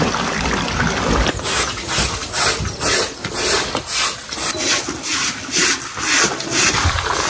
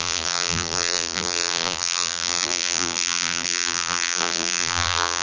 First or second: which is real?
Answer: first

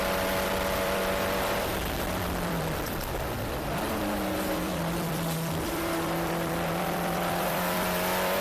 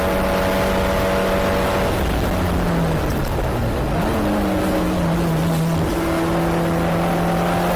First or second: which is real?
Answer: second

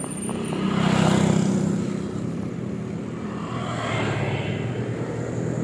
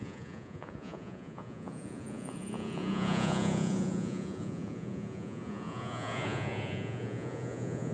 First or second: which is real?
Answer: first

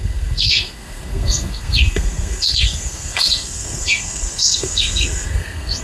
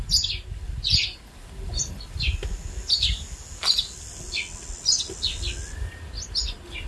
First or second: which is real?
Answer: second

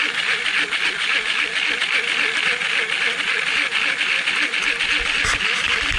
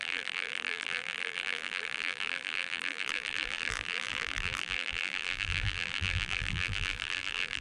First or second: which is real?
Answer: first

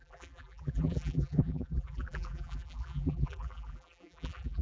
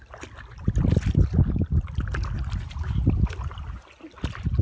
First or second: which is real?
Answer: second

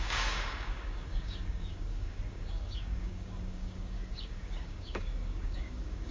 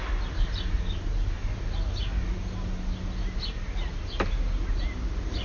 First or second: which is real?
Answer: second